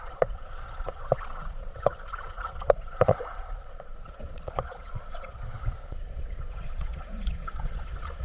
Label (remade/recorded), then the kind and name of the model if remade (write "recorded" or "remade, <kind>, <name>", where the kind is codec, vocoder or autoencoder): remade, vocoder, Vocos